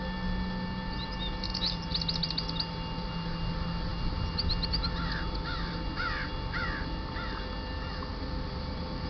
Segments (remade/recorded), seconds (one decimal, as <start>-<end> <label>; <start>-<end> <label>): 0.0-9.1 recorded